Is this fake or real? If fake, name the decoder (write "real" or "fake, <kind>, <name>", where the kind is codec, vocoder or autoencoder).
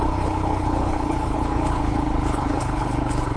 fake, codec, HILCodec